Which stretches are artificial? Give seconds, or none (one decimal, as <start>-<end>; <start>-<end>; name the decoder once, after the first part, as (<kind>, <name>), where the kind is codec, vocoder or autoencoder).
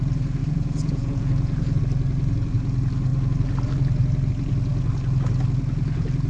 0.4-1.8 (vocoder, Vocos)